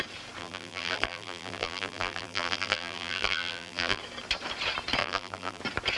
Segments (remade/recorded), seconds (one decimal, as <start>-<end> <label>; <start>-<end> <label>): 0.0-0.4 recorded; 0.4-4.0 remade; 4.0-5.0 recorded; 5.0-5.6 remade; 5.6-6.0 recorded